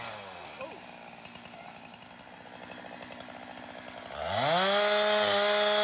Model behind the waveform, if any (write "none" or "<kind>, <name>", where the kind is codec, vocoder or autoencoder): none